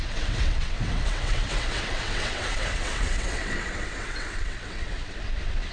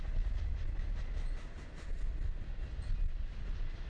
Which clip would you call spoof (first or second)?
first